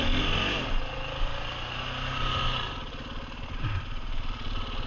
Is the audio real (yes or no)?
yes